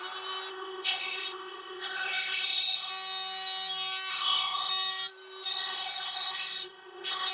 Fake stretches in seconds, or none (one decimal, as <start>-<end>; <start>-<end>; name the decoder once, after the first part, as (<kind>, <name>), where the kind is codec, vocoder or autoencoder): 0.5-2.9 (codec, ZipCodec); 4.1-4.7; 5.5-7.3